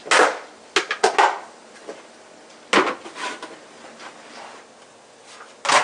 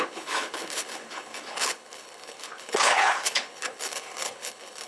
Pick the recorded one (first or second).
first